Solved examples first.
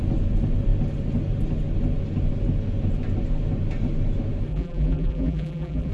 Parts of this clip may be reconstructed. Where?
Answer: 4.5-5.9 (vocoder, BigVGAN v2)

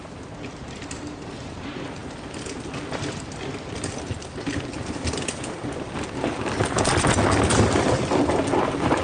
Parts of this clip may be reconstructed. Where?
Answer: none

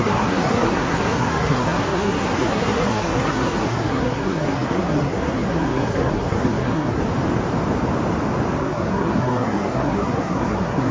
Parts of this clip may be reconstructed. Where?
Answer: 0.0-7.0 (codec, SNAC); 8.6-10.9

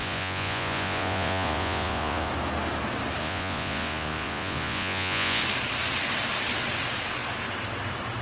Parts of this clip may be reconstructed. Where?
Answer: 0.0-2.3 (vocoder, Vocos); 3.2-5.4

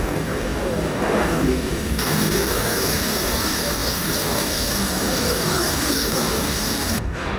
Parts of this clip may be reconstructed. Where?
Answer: 0.0-7.4 (codec, DAC)

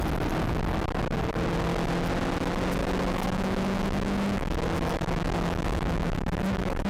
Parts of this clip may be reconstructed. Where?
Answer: 2.8-6.9 (autoencoder, DAC-VAE)

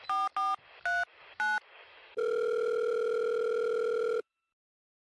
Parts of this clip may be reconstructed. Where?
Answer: none